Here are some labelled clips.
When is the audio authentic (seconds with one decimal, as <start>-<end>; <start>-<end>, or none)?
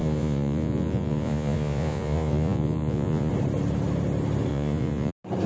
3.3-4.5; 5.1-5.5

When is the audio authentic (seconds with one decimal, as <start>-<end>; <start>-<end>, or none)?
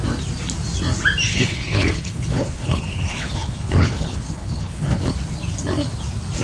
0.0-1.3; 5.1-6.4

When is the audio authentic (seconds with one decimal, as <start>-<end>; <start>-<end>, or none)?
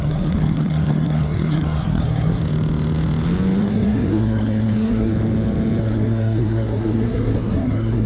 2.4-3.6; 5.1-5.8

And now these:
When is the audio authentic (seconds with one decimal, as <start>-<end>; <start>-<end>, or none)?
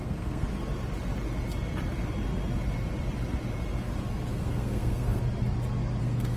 0.5-4.3; 5.2-6.0